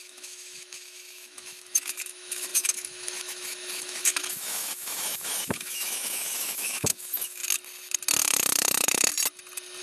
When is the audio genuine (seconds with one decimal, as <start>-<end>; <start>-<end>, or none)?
7.4-8.2; 9.1-9.8